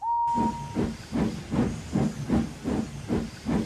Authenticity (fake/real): real